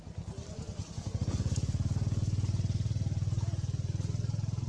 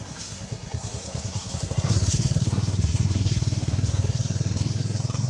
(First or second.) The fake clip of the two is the second